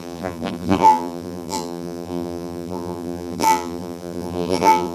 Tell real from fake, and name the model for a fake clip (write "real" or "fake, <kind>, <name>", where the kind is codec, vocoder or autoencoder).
fake, vocoder, BigVGAN v2